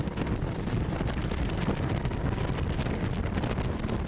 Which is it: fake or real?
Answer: real